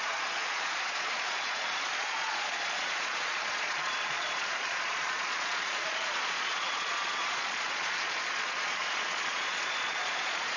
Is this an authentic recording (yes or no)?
no